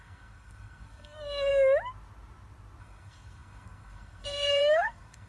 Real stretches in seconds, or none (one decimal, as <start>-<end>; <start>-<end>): 1.5-2.8